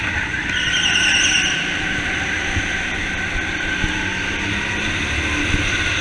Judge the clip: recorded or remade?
recorded